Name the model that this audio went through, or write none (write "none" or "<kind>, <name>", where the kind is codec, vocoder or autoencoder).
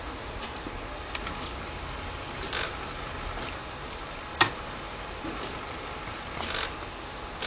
none